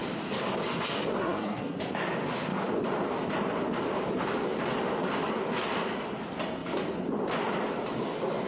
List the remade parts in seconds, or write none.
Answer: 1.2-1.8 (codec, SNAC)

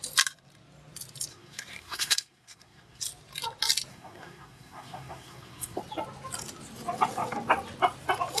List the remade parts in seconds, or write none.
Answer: 1.3-3.0 (codec, SNAC); 3.9-5.8

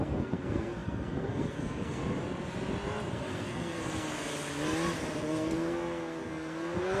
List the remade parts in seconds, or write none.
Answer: 0.0-2.0 (codec, SNAC); 3.1-4.3; 5.2-7.0

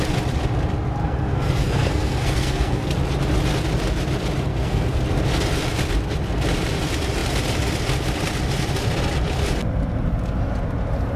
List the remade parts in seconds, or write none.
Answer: 1.0-2.9 (codec, SNAC); 4.5-5.0

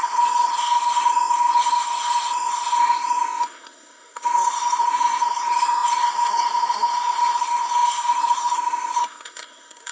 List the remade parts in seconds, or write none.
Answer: 0.0-9.9 (codec, SNAC)

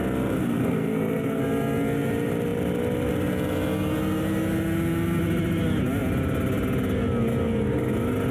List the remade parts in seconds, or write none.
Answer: 0.4-1.4 (codec, SNAC)

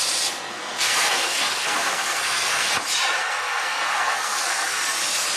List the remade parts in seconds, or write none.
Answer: 0.5-2.7 (codec, SNAC); 3.2-4.8